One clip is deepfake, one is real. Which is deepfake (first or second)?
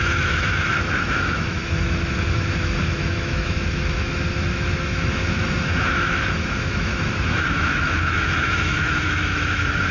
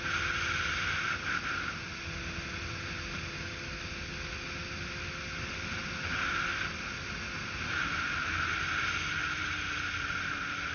first